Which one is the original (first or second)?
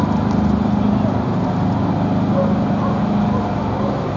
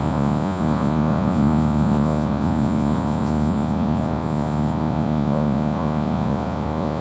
first